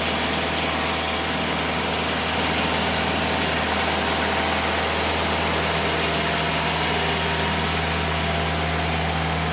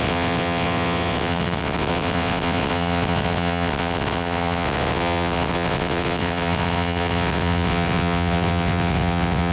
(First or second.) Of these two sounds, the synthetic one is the second